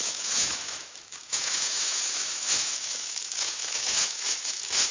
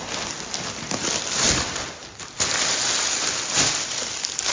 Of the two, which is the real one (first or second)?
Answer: second